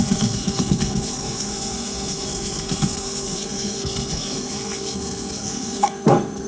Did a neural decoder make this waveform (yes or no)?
yes